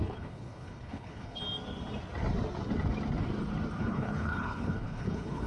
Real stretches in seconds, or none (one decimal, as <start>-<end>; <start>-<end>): 1.4-3.8